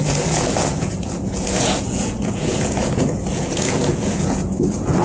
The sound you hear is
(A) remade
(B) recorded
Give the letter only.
A